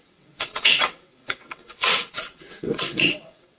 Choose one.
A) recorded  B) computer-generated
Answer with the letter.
B